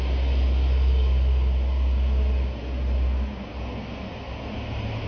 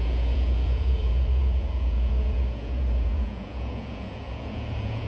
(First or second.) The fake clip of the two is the second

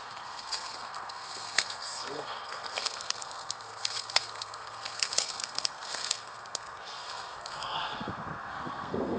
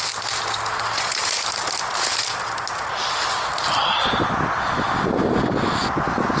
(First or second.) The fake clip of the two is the first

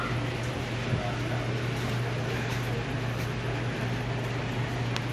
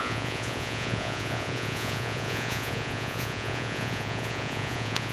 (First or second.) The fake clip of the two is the second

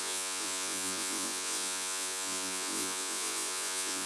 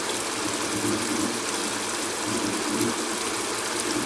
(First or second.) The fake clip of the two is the first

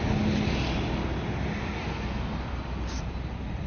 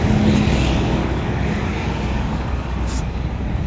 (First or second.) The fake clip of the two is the second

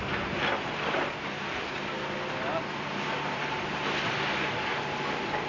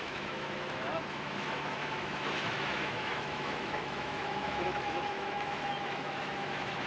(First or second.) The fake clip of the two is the second